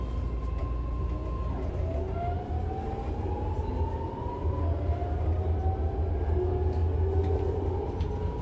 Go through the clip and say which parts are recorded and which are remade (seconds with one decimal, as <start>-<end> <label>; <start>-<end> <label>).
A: 0.0-8.4 recorded